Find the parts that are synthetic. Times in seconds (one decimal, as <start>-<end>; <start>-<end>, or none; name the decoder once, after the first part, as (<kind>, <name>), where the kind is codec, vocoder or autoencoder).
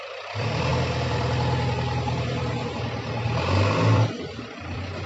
0.0-0.7 (vocoder, BigVGAN v2); 3.8-5.1